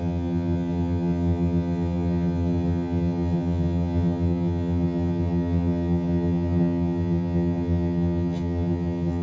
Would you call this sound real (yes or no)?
no